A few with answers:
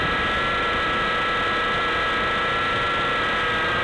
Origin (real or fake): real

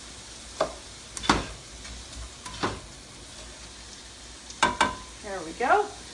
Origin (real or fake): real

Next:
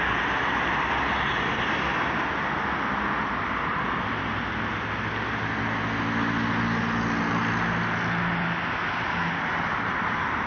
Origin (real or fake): real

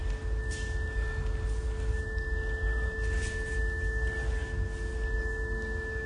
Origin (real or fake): real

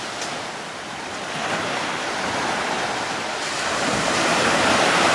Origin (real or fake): real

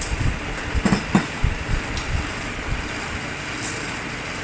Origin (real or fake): fake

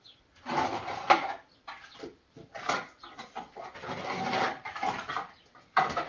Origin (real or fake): real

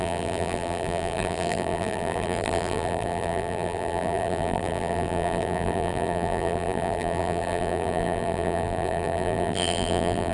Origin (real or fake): fake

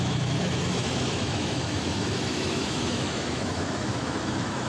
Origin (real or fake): fake